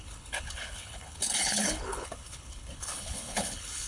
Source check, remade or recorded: remade